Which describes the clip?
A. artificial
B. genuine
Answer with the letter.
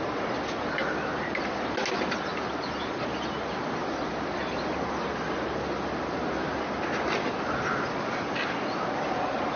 B